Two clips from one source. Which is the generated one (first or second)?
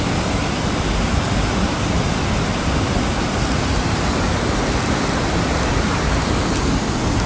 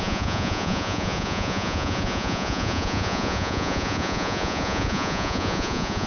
second